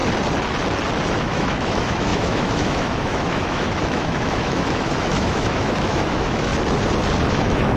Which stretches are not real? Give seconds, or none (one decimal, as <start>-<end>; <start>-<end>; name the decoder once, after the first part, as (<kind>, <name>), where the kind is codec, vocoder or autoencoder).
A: 1.2-6.5 (autoencoder, DAC-VAE); 7.3-7.8